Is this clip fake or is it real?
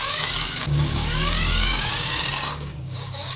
fake